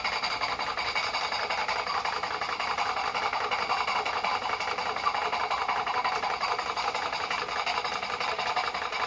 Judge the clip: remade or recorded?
recorded